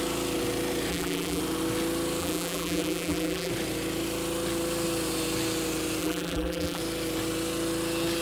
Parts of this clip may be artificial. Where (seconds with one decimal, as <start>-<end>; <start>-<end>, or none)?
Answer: 0.9-1.4; 2.2-3.5; 6.0-6.8